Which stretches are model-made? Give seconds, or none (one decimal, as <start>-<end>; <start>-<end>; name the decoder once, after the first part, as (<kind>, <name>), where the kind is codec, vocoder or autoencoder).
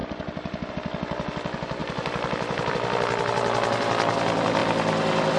0.0-0.7 (vocoder, BigVGAN v2); 1.8-2.7; 4.6-5.4